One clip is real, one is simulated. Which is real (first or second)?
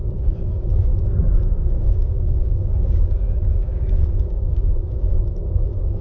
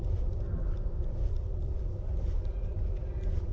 second